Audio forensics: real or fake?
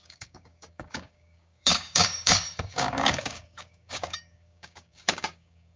fake